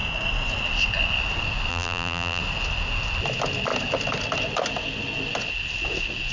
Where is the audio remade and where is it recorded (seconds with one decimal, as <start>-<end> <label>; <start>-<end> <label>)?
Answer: 0.0-1.7 recorded; 1.7-2.4 remade; 2.4-6.3 recorded